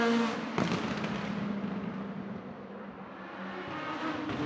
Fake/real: real